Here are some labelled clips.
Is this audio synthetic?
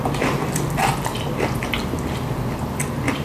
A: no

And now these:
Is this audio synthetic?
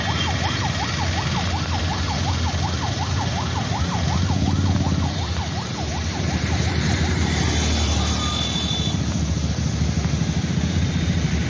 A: no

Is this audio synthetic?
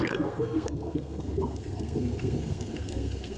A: yes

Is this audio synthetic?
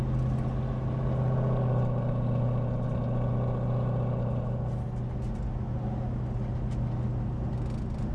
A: no